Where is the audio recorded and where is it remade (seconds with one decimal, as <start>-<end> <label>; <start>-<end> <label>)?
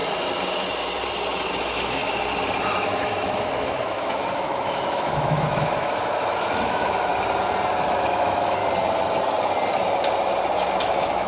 0.0-1.5 recorded; 1.5-2.0 remade; 2.0-2.6 recorded; 2.6-7.1 remade; 7.1-8.1 recorded; 8.1-8.6 remade; 8.6-10.8 recorded; 10.8-11.3 remade